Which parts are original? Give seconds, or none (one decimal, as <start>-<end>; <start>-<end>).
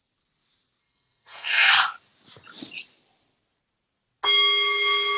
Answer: 0.0-0.8; 1.7-5.2